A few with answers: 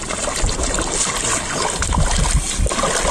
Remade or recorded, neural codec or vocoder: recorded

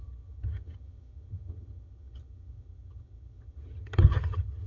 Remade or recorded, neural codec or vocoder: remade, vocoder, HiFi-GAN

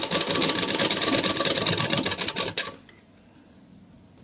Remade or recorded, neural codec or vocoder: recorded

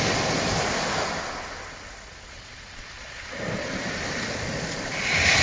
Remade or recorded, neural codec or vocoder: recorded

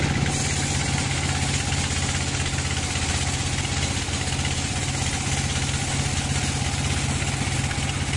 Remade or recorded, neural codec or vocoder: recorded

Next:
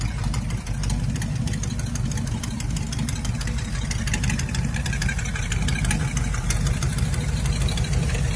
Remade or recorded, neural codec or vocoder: remade, vocoder, BigVGAN v2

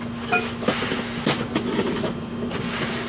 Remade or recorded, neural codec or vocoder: recorded